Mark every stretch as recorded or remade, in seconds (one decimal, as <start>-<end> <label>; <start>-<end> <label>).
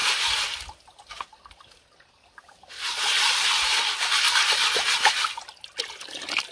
0.0-6.5 recorded